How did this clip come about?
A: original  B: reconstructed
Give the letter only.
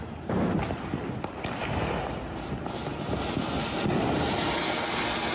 A